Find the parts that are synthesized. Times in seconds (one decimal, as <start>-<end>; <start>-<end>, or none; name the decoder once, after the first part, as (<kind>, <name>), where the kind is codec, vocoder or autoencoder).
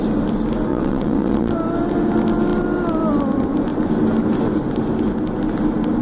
0.7-1.5 (vocoder, WaveNeXt)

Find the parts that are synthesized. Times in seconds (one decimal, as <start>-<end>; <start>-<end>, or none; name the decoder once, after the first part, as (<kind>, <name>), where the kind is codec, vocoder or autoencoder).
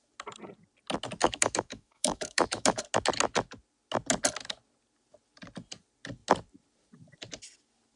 1.2-2.8 (autoencoder, DAC-VAE)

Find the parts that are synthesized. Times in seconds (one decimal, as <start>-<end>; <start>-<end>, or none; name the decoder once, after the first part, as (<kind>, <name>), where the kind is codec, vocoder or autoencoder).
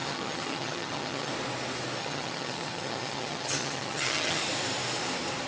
0.0-1.3 (vocoder, HiFi-GAN); 2.0-4.4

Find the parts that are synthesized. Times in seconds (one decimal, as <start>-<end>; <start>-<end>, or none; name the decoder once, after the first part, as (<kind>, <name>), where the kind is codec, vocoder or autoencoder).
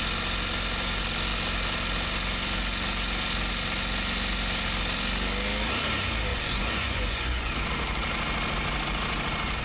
6.3-7.5 (vocoder, Vocos)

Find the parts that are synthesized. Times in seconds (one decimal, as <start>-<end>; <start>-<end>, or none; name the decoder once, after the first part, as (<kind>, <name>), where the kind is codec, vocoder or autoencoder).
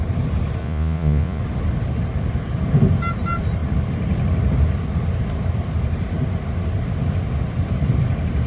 0.6-1.4 (vocoder, Vocos)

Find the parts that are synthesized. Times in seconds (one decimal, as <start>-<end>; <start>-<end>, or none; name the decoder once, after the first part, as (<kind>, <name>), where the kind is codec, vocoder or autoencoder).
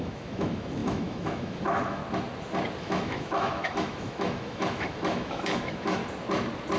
0.0-2.0 (autoencoder, DAC-VAE); 2.8-6.0